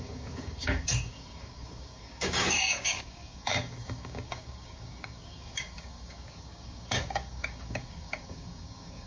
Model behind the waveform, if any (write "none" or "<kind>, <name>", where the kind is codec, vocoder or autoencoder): codec, DAC